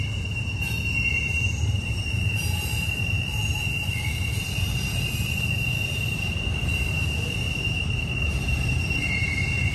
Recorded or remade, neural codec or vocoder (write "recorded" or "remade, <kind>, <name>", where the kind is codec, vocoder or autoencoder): remade, vocoder, BigVGAN v2